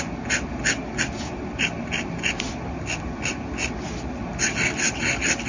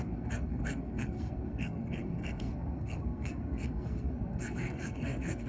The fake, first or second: second